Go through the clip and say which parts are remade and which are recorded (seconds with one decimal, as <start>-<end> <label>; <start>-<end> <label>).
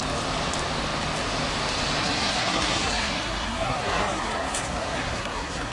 0.0-2.0 recorded; 2.0-5.7 remade